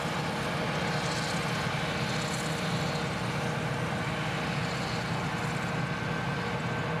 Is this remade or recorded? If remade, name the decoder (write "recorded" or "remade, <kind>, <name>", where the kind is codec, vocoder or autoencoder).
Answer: recorded